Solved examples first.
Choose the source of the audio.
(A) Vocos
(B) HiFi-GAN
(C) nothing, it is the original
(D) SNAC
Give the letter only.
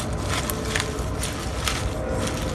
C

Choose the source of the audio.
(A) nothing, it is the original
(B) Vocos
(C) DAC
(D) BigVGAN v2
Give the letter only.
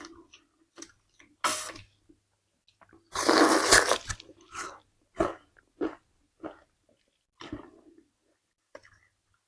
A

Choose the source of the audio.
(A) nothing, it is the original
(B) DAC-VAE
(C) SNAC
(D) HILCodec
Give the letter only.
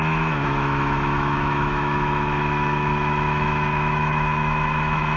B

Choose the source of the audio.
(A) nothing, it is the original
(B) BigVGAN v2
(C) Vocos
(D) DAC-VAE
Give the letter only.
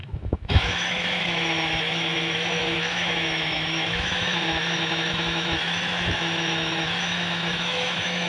D